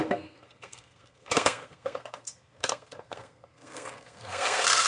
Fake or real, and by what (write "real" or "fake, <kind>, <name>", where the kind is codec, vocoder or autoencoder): fake, codec, SNAC